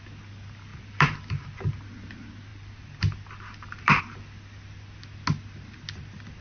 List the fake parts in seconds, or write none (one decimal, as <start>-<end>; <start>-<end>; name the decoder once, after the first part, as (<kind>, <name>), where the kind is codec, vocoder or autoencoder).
0.7-2.0 (vocoder, BigVGAN v2); 2.5-4.0